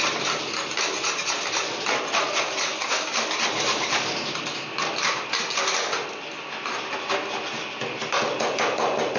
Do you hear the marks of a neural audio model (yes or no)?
no